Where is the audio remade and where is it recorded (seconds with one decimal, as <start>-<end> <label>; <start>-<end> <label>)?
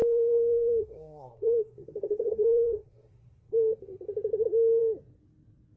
0.0-3.5 remade; 3.5-5.8 recorded